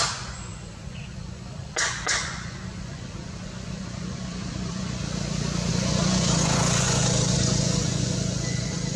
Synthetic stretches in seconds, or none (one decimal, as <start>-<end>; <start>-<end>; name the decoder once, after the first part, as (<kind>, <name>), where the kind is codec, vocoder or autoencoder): 0.0-5.0 (vocoder, Vocos); 5.7-9.0